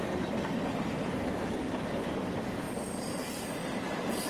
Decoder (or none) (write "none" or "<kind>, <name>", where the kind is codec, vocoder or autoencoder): none